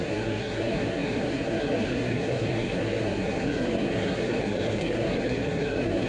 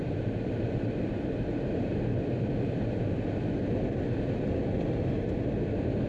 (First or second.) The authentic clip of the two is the second